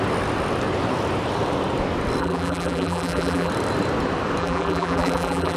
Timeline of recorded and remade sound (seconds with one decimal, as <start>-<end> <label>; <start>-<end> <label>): 0.0-2.2 recorded; 2.2-3.5 remade; 3.5-4.4 recorded; 4.4-5.6 remade